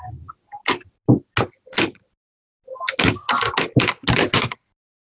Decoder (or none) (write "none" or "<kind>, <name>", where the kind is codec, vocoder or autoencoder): none